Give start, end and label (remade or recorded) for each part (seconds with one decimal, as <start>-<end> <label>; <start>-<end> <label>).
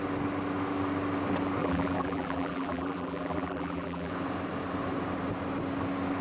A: 0.0-1.6 recorded; 1.6-4.1 remade; 4.1-6.2 recorded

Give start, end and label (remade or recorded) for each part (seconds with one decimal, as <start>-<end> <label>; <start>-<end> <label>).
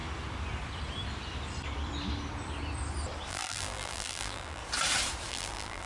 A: 0.0-3.3 recorded; 3.3-4.6 remade; 4.6-5.3 recorded; 5.3-5.9 remade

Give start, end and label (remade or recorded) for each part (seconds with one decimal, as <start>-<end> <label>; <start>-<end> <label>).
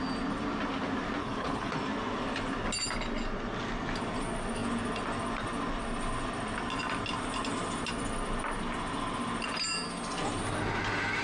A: 0.0-1.2 recorded; 1.2-1.7 remade; 1.7-11.2 recorded